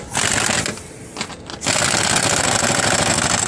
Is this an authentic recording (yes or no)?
yes